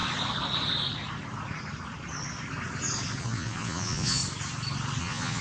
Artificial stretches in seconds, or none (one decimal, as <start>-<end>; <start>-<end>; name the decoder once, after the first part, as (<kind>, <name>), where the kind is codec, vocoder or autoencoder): 3.2-4.2 (vocoder, Vocos); 5.0-5.4